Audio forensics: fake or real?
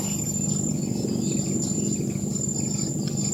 real